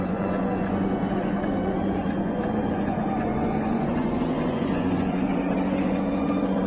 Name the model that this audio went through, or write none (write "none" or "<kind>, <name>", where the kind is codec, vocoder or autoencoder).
vocoder, Vocos